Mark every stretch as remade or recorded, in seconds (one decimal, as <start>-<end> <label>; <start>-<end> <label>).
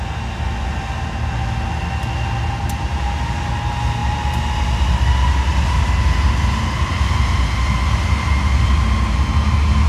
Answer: 0.0-9.9 recorded